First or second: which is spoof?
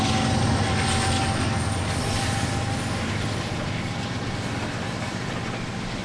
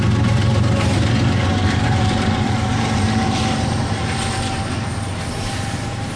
second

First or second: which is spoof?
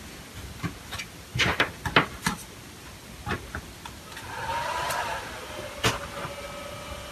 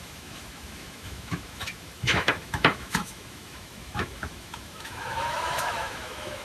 second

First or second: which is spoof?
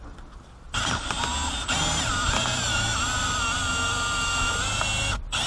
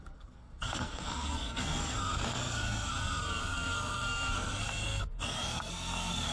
second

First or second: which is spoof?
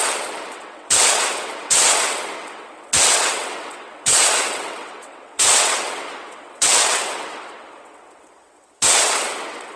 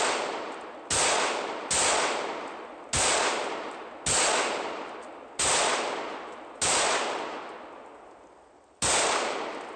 first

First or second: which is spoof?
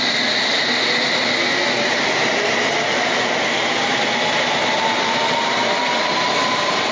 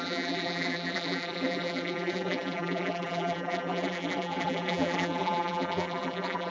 second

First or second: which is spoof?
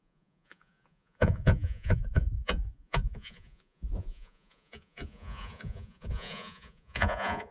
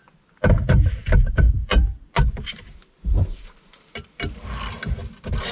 first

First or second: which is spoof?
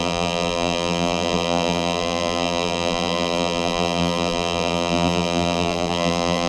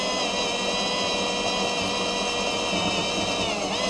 first